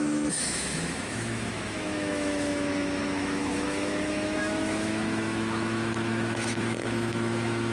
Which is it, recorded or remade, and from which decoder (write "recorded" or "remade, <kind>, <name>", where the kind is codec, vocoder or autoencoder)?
remade, autoencoder, DAC-VAE